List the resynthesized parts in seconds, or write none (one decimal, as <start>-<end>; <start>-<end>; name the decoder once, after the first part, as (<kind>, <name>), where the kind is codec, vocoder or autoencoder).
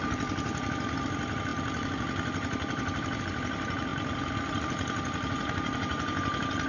none